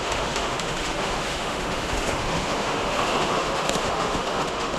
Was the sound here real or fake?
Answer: fake